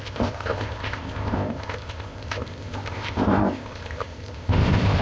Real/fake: fake